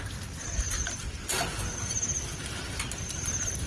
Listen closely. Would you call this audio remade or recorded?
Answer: recorded